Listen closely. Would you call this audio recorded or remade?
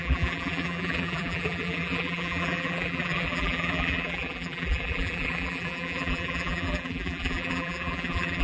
remade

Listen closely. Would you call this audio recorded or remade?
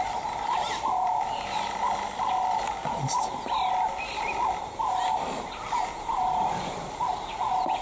recorded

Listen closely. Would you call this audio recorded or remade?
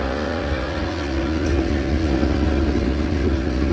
remade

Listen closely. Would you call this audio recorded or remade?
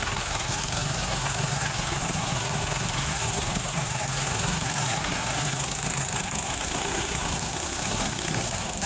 remade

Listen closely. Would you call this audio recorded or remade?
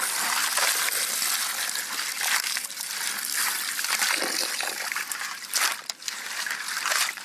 recorded